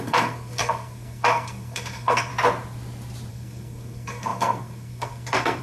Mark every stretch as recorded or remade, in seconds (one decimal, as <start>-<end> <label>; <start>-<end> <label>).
0.0-2.3 remade; 2.3-3.3 recorded; 3.3-5.6 remade